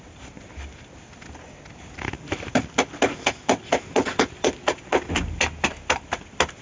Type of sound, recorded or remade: recorded